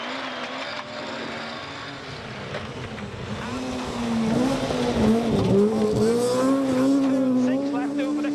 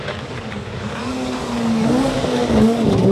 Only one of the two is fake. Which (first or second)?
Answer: second